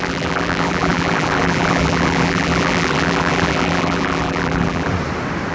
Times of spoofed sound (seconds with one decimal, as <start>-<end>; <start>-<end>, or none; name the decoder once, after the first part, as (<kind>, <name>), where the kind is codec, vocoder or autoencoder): 0.0-4.9 (vocoder, BigVGAN v2)